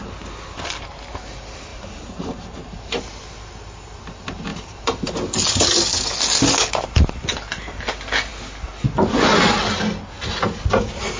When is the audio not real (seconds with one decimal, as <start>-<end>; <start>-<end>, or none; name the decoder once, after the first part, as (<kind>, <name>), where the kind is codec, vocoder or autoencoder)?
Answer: 1.7-3.0 (vocoder, BigVGAN v2); 4.5-5.1